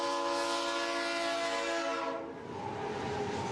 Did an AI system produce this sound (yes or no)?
no